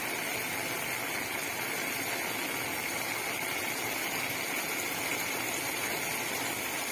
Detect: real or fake real